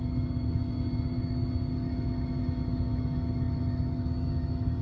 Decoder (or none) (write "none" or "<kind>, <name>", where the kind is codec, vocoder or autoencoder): autoencoder, DAC-VAE